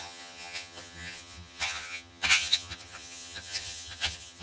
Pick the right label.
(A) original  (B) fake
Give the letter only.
B